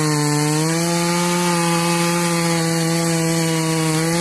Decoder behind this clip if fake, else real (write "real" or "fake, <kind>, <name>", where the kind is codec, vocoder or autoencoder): real